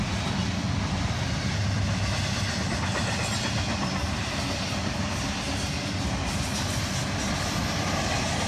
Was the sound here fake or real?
real